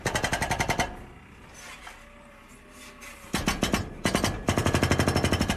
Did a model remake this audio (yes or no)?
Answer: no